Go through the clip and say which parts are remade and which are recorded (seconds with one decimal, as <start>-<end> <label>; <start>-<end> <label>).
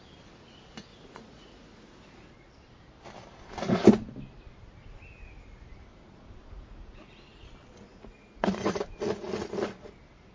0.0-0.9 recorded; 0.9-2.5 remade; 2.5-5.9 recorded; 5.9-7.5 remade; 7.5-7.9 recorded; 7.9-8.6 remade; 8.6-10.3 recorded